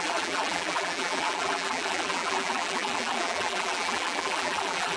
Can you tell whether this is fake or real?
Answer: fake